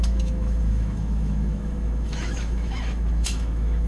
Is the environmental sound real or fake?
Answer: fake